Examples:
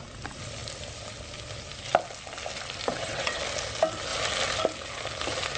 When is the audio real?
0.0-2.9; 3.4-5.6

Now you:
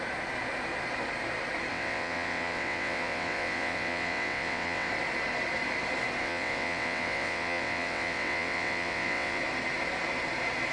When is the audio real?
0.0-1.7; 4.9-6.2; 9.4-10.7

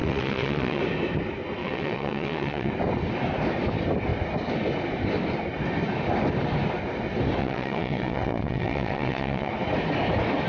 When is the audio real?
0.8-1.6; 2.7-7.4; 9.5-10.5

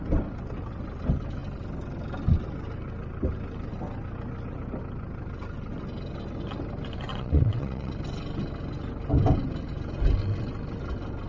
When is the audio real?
0.0-7.1; 7.9-11.3

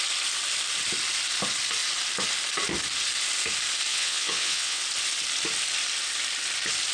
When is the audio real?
0.0-3.9; 4.8-6.9

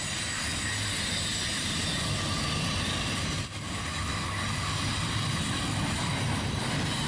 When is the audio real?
0.0-7.1

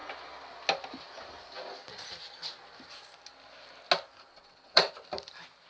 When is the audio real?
0.0-4.3; 4.9-5.7

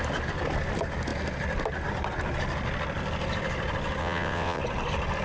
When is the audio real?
0.0-4.0; 4.6-5.2